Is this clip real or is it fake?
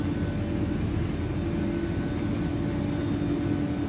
real